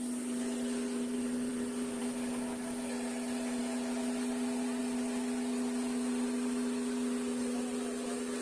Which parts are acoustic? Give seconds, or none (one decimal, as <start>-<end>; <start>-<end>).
0.0-8.4